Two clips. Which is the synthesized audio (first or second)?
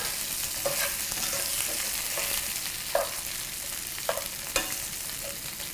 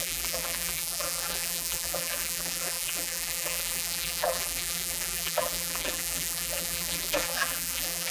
second